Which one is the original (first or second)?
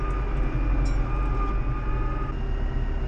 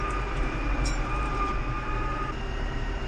first